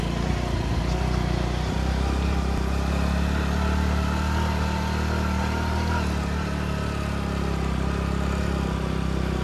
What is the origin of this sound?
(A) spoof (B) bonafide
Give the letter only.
B